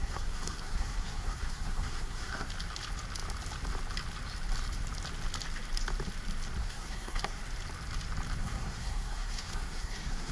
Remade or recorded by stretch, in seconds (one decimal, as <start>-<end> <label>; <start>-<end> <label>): 0.0-2.5 remade; 2.5-6.6 recorded; 6.6-7.4 remade; 7.4-8.4 recorded; 8.4-10.3 remade